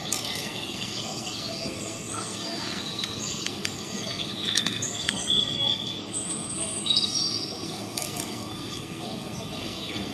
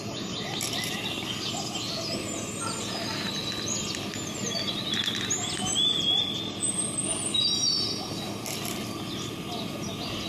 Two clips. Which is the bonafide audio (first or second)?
second